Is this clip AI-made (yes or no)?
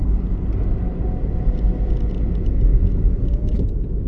no